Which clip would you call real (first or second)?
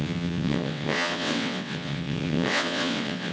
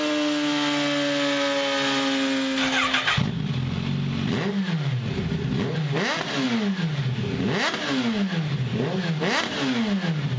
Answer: second